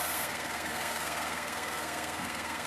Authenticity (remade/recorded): remade